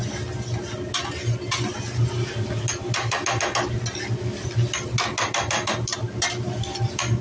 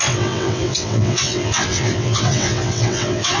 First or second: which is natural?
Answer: first